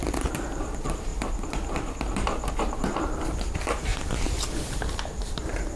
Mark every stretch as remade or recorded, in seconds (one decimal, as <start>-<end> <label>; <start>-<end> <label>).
0.0-1.1 remade; 1.1-2.5 recorded; 2.5-3.9 remade; 3.9-5.0 recorded; 5.0-5.8 remade